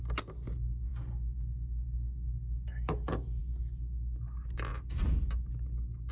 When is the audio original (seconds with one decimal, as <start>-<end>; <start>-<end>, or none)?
0.0-6.1